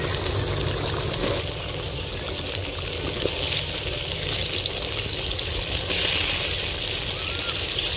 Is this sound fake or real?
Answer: real